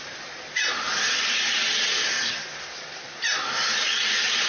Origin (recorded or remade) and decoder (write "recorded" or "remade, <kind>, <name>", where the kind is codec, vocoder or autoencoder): recorded